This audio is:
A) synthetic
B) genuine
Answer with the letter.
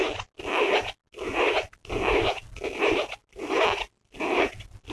B